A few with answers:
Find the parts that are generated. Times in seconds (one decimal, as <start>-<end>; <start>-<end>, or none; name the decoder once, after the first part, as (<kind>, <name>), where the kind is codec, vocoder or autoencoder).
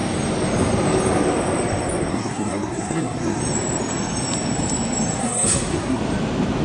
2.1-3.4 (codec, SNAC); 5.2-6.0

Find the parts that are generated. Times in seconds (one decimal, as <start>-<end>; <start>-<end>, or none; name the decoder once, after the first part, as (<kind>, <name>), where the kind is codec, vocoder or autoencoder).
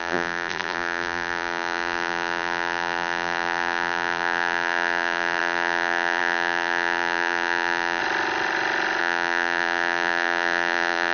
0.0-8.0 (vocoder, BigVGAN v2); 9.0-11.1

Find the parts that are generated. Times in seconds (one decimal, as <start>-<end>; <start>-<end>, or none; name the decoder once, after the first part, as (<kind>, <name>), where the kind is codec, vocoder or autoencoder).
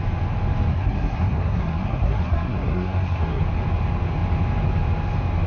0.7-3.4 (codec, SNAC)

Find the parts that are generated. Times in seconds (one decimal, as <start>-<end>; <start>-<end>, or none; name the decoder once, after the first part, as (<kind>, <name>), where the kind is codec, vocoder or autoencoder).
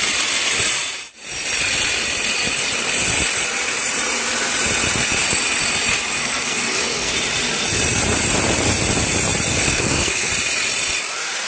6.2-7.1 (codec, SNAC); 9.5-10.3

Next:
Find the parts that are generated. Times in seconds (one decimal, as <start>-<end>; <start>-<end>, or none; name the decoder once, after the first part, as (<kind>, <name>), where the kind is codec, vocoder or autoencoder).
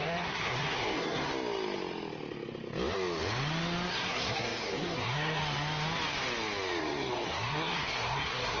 0.0-1.3 (codec, SNAC); 3.9-5.4; 6.8-8.6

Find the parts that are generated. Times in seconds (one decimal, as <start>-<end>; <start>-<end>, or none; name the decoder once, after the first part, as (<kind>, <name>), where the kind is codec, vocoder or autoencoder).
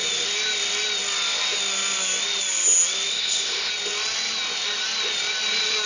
3.1-3.7 (codec, ZipCodec)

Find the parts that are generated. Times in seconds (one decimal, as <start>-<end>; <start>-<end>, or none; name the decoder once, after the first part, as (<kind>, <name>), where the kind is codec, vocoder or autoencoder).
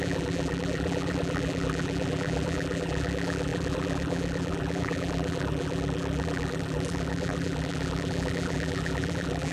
0.0-9.5 (vocoder, BigVGAN v2)